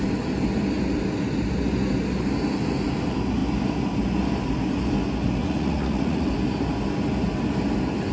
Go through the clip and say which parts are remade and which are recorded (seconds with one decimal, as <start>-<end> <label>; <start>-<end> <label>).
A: 0.0-5.4 recorded; 5.4-6.3 remade; 6.3-8.1 recorded